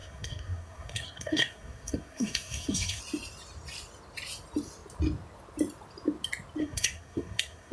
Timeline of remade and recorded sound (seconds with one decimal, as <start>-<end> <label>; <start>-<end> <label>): 0.0-3.0 remade; 3.0-6.6 recorded; 6.6-7.7 remade